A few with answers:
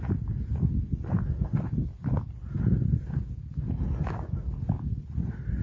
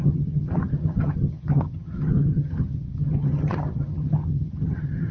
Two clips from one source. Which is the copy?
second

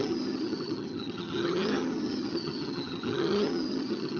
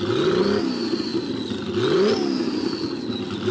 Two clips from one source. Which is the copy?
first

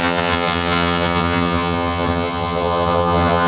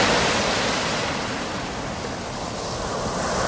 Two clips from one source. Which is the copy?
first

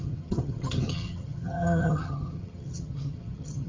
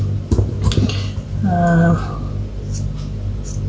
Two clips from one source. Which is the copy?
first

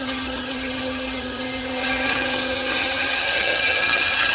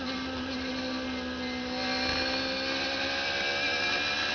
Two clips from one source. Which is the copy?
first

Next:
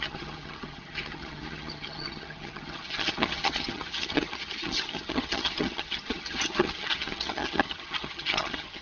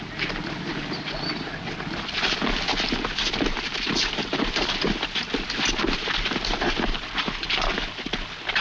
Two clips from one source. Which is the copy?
first